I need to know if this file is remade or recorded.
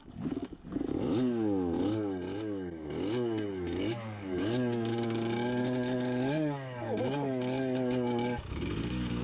remade